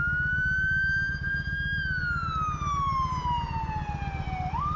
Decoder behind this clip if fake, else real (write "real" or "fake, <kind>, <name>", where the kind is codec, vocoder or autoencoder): real